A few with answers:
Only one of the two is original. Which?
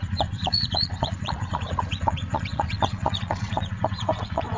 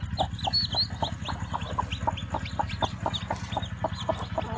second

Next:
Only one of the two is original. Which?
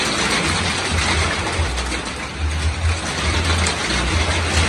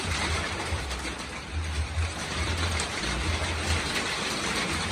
first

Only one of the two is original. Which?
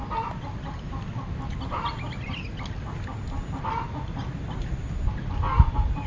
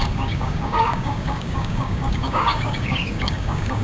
first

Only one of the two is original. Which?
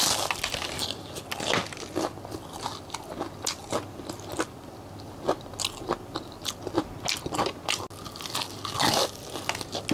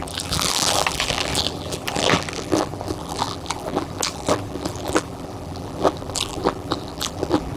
first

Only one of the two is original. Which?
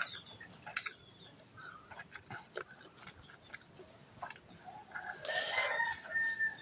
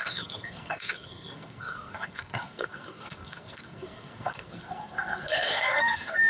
first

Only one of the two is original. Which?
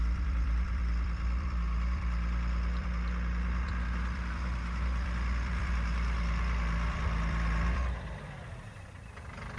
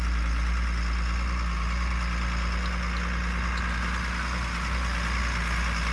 second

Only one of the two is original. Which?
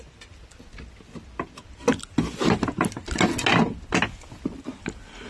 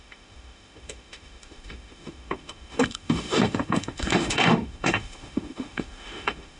first